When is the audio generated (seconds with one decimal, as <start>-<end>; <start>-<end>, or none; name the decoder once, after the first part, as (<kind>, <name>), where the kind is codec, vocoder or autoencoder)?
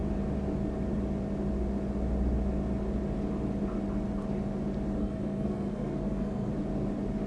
5.0-6.5 (codec, SNAC)